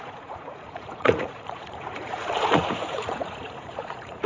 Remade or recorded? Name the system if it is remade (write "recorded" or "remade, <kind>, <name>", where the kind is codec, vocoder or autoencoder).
remade, vocoder, Vocos